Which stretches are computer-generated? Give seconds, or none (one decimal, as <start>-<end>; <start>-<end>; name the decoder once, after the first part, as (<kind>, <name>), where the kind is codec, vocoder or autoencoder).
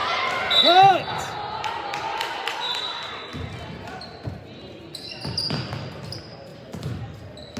6.5-7.0 (vocoder, BigVGAN v2)